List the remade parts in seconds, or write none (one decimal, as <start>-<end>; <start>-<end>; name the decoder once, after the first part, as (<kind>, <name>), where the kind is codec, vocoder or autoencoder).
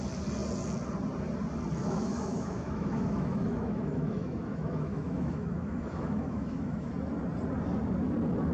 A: 1.8-6.9 (autoencoder, DAC-VAE)